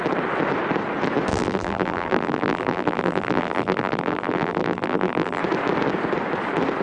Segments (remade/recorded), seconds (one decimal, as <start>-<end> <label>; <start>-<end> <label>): 0.0-1.3 recorded; 1.3-5.4 remade; 5.4-6.8 recorded